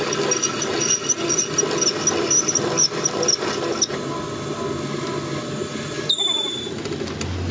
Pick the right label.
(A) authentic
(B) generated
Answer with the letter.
A